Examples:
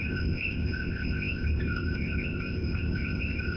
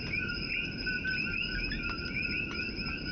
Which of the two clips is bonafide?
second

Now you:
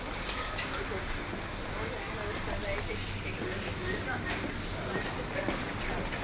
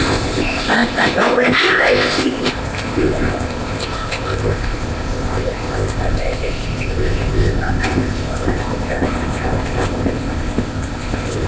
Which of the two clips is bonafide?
first